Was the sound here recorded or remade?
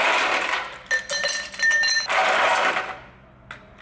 recorded